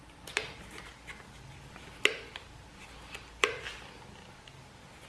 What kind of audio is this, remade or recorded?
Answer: recorded